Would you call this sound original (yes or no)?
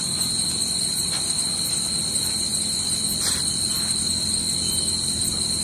yes